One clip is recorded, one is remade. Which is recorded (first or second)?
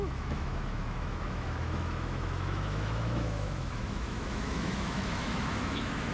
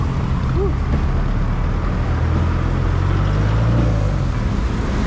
second